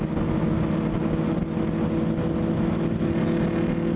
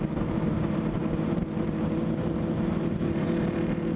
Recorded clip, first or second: first